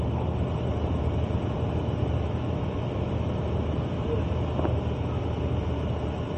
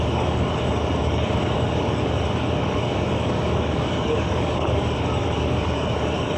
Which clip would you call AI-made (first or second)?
second